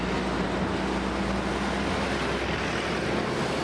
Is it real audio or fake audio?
real